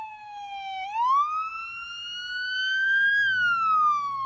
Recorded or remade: recorded